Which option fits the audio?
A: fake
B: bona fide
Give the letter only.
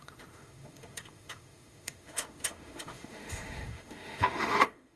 A